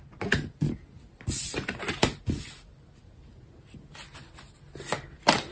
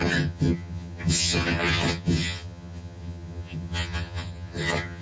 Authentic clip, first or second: first